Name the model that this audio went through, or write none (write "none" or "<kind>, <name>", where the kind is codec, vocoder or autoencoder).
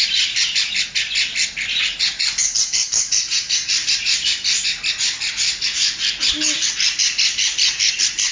none